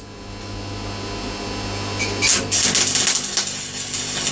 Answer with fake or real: real